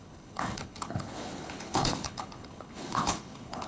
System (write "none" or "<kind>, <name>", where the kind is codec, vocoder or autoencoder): codec, HILCodec